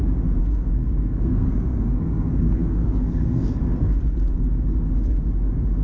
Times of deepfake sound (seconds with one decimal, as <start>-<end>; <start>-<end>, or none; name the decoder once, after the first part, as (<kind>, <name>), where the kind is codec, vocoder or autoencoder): 0.4-3.9 (codec, SNAC)